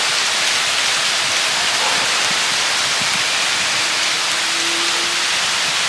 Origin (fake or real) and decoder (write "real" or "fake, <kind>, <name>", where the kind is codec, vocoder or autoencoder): real